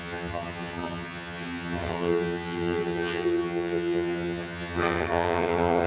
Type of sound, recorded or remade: remade